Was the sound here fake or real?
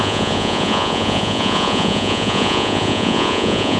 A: fake